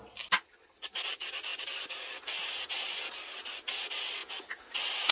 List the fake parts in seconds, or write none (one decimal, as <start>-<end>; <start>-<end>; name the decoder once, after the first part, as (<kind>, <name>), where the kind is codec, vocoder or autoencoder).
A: none